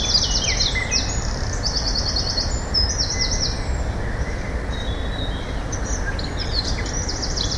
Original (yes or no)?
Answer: yes